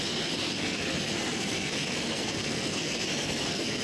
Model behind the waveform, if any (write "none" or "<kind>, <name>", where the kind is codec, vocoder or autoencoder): codec, SNAC